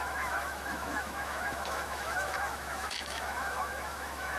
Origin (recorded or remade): remade